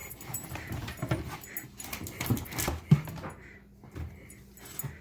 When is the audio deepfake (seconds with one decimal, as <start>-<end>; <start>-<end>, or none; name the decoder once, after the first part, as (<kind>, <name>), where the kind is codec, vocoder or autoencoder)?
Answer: 0.0-1.2 (vocoder, BigVGAN v2)